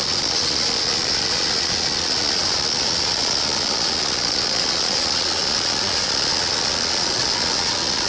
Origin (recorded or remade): remade